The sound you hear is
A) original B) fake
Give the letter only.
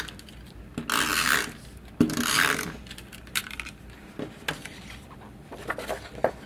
A